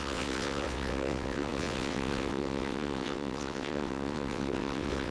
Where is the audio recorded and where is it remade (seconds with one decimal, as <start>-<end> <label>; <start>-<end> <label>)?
0.0-5.1 remade